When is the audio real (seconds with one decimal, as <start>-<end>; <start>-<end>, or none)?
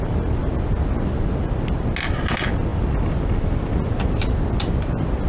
0.0-5.3